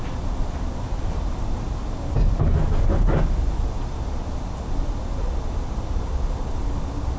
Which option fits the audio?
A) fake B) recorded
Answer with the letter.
B